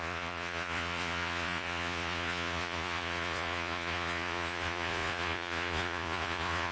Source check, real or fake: fake